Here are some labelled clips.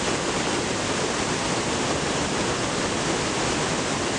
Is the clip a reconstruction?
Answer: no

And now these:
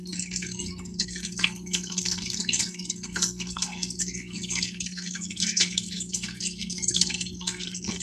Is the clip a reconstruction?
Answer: yes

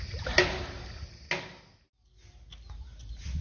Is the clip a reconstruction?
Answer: no